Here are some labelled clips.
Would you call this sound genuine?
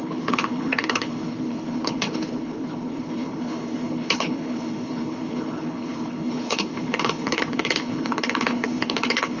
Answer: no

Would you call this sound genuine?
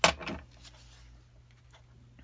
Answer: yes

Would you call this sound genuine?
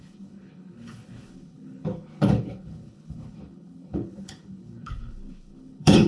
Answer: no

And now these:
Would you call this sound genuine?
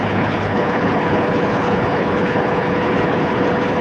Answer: no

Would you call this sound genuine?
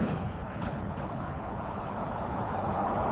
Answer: no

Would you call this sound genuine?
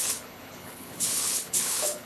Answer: no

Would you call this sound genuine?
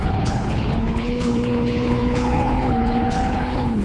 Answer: no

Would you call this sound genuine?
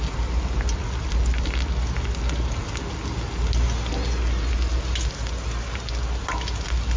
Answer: yes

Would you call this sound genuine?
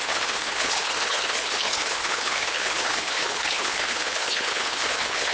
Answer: no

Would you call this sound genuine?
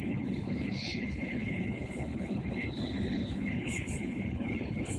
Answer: no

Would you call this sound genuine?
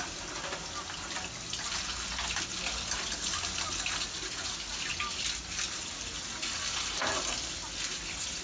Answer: yes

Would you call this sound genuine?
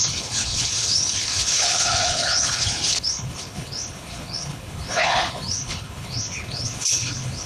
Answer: no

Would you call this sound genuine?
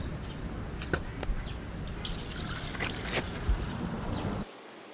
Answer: yes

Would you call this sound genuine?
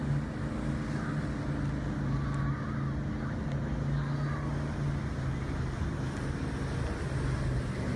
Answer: yes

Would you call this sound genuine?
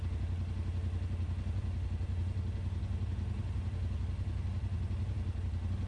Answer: yes